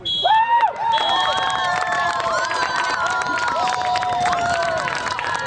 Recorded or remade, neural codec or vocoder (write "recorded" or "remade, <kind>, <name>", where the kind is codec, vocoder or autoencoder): remade, vocoder, BigVGAN v2